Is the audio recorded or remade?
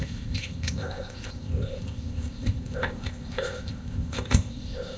remade